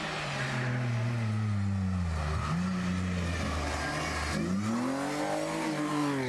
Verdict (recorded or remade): recorded